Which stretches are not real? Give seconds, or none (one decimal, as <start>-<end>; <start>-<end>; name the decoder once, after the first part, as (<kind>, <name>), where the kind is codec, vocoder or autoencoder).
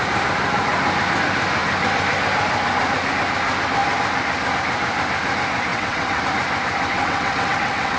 5.7-6.2 (vocoder, WaveNeXt); 6.9-8.0